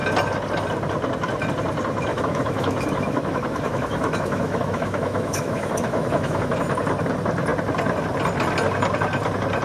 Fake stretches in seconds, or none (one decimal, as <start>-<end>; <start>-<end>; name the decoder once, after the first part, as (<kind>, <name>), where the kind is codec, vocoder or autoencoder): 2.1-6.5 (autoencoder, DAC-VAE)

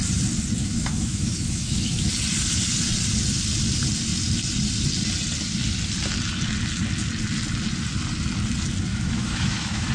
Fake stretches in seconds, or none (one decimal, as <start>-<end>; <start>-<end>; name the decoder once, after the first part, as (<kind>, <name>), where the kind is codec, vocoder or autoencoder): 0.6-2.1 (autoencoder, DAC-VAE); 8.9-9.9

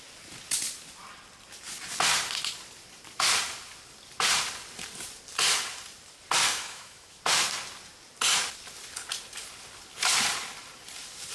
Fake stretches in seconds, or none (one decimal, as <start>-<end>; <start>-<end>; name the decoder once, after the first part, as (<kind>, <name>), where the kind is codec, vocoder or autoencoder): 6.5-7.2 (autoencoder, DAC-VAE)

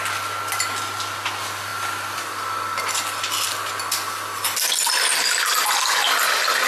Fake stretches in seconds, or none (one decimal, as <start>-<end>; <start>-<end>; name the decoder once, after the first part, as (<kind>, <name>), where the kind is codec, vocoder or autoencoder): none

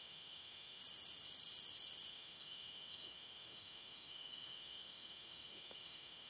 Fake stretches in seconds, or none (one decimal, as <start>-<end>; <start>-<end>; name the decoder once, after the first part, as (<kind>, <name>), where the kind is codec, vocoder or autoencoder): 0.0-0.8 (autoencoder, DAC-VAE); 2.1-6.3

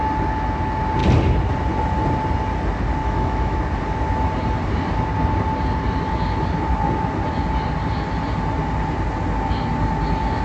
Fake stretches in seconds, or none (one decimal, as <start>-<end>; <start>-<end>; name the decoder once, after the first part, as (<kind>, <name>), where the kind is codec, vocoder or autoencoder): 3.0-3.6 (autoencoder, DAC-VAE)